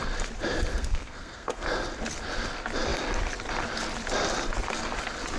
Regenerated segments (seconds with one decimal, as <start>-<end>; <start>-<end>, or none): 0.7-1.6